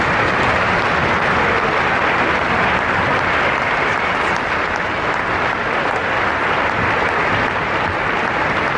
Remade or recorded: recorded